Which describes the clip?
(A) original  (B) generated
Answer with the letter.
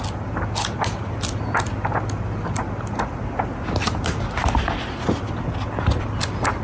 A